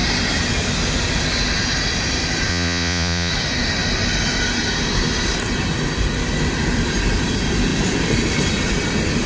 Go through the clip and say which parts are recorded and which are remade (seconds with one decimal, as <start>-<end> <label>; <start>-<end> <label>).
0.0-2.5 recorded; 2.5-3.3 remade; 3.3-9.3 recorded